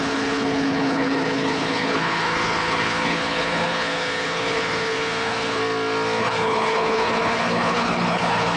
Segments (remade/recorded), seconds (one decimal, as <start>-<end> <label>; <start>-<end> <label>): 0.0-5.6 remade; 5.6-6.2 recorded; 6.2-8.6 remade